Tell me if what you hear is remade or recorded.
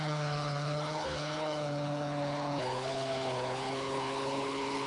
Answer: remade